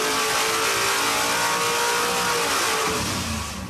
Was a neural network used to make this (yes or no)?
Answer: no